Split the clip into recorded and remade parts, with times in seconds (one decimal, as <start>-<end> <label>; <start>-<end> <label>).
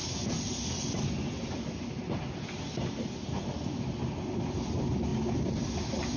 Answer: 0.0-6.2 recorded